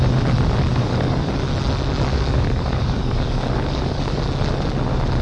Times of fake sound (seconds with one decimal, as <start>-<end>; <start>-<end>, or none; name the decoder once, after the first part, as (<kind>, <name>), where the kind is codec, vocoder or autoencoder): 0.7-1.3 (codec, DAC); 2.1-4.2